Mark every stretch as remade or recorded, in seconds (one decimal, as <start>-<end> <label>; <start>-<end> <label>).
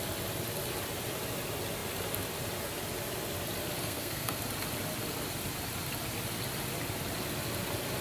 0.0-3.8 recorded; 3.8-4.4 remade; 4.4-8.0 recorded